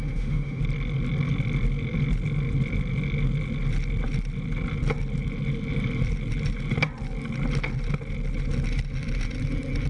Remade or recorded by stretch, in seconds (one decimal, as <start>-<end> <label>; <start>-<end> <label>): 0.0-0.6 remade; 0.6-9.9 recorded